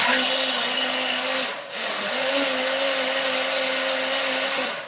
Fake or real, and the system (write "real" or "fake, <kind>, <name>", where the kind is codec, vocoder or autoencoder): real